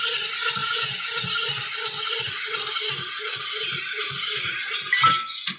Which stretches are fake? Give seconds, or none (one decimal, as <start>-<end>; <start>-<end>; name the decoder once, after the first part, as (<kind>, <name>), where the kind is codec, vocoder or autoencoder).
0.6-1.2 (vocoder, Vocos)